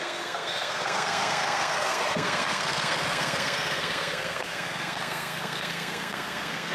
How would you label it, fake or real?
fake